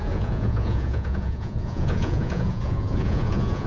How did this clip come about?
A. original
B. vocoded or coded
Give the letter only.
B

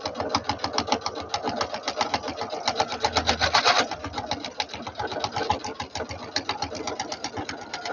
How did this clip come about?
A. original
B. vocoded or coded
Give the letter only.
A